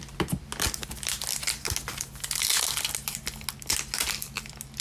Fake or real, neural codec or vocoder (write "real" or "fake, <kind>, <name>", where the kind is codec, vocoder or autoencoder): real